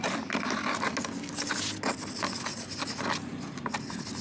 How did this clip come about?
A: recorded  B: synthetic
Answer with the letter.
A